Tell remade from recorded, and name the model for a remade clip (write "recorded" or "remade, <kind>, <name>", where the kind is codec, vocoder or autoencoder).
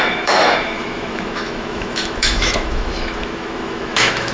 remade, autoencoder, DAC-VAE